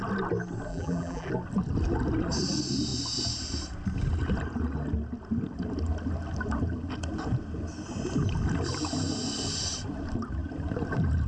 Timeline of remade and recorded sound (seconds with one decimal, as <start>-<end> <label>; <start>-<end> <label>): 0.0-0.7 recorded; 0.7-1.3 remade; 1.3-11.3 recorded